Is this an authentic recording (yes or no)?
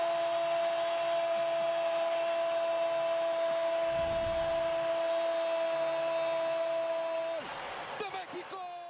yes